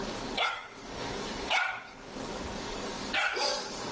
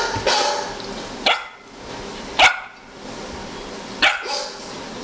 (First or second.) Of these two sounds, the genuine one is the second